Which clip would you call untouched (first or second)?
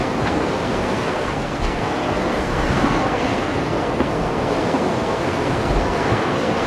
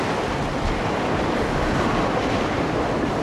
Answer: second